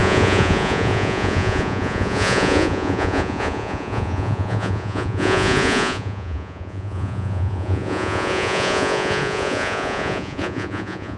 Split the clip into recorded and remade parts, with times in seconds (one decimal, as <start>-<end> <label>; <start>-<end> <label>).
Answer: 0.0-11.2 remade